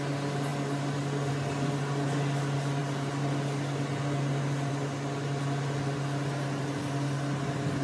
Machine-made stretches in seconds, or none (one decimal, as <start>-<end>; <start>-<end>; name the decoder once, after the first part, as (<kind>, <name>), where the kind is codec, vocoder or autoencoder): none